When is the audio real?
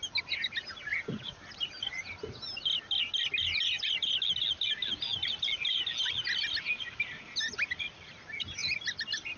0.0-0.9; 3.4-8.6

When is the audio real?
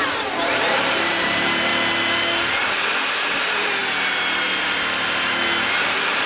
1.7-3.4; 3.8-5.6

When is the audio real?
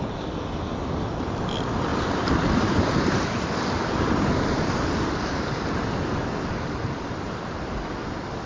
0.0-1.9; 7.0-8.5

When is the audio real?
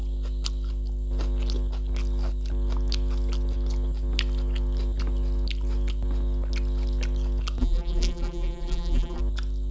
0.0-7.6; 9.2-9.7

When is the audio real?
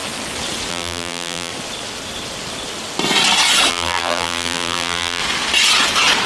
0.0-0.7; 1.5-3.7; 5.2-6.3